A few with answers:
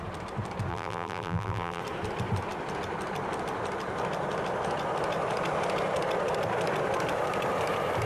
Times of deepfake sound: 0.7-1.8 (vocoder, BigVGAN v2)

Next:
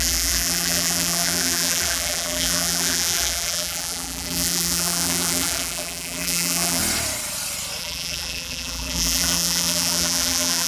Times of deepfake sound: 0.0-6.8 (vocoder, BigVGAN v2); 7.8-10.7

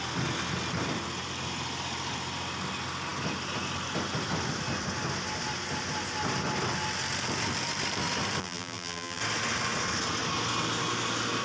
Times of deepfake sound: 8.4-9.2 (vocoder, BigVGAN v2)

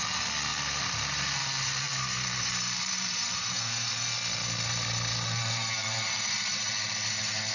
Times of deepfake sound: 0.5-3.9 (vocoder, BigVGAN v2); 5.8-6.6